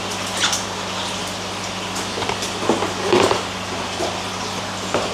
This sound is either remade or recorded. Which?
recorded